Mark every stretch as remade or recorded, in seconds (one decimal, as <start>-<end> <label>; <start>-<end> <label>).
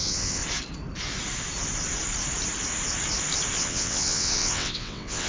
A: 0.0-0.4 remade; 0.4-3.6 recorded; 3.6-5.3 remade